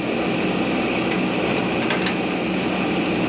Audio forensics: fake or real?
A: real